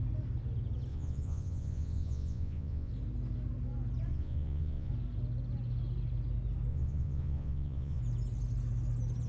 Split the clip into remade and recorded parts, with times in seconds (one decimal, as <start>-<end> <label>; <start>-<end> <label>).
0.0-0.9 recorded; 0.9-2.9 remade; 2.9-4.1 recorded; 4.1-4.9 remade; 4.9-6.7 recorded; 6.7-8.0 remade; 8.0-9.3 recorded